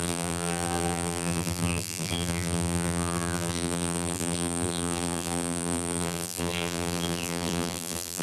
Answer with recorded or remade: remade